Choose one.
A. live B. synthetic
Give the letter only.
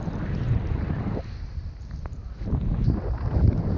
A